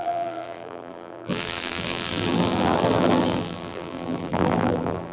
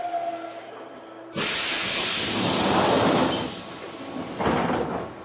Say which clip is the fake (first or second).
first